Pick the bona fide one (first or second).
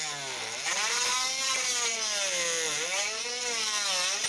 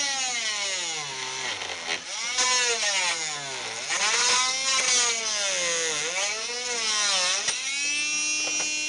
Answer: second